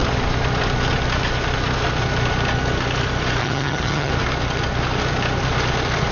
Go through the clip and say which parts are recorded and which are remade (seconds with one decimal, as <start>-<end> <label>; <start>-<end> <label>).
0.0-3.4 recorded; 3.4-4.1 remade; 4.1-6.1 recorded